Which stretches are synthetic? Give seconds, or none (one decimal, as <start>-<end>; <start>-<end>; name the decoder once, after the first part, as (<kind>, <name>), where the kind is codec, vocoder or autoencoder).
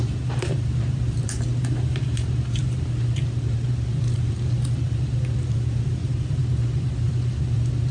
0.0-7.9 (vocoder, BigVGAN v2)